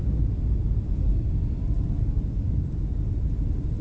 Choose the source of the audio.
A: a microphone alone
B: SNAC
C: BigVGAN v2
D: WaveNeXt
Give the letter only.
A